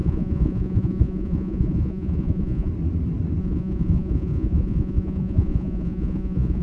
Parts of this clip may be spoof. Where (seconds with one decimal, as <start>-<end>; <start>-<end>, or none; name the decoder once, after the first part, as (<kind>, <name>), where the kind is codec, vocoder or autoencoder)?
0.0-2.7 (vocoder, Vocos); 3.4-6.6